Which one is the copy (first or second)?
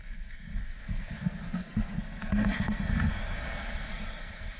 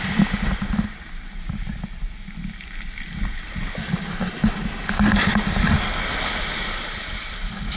first